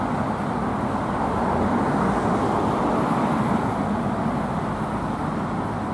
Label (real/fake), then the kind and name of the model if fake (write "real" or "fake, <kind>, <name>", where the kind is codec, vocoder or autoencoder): real